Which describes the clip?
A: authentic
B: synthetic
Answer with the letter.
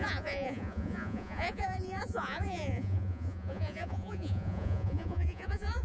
B